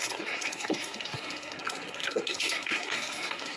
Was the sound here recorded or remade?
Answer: remade